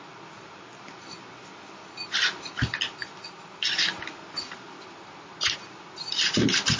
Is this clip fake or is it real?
real